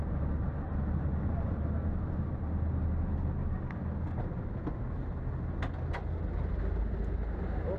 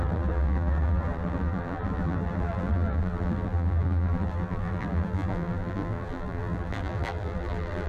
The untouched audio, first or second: first